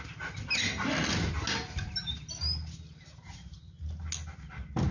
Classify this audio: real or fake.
real